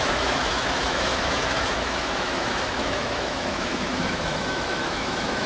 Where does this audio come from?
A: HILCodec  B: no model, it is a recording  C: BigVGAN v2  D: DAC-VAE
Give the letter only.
D